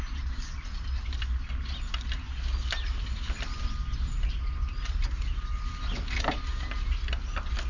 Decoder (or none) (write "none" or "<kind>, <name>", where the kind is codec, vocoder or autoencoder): none